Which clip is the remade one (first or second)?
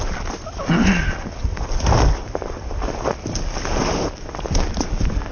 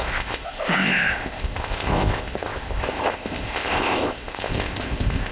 second